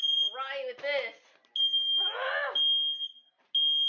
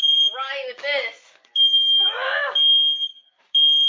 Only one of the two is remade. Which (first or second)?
second